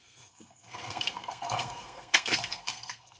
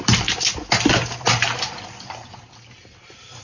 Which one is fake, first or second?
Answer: first